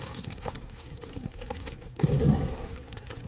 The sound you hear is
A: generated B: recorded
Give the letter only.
A